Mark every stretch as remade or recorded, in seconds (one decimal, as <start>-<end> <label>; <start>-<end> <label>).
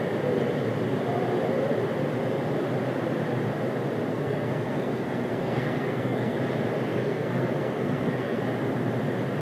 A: 0.0-4.1 recorded; 4.1-6.4 remade; 6.4-6.9 recorded; 6.9-8.4 remade; 8.4-9.4 recorded